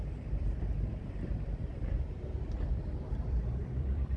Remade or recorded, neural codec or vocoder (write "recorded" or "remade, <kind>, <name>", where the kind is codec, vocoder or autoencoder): remade, vocoder, BigVGAN v2